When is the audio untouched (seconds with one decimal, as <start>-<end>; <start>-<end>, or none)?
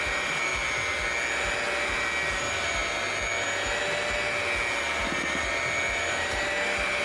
0.5-2.3; 2.8-5.4